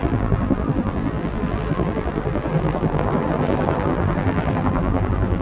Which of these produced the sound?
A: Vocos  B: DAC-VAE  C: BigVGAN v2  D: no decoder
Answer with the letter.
C